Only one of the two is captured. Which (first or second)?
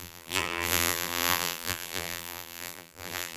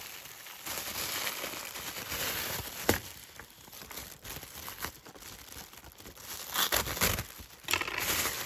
second